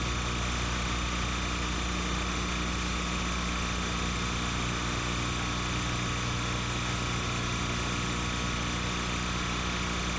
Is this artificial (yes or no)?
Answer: no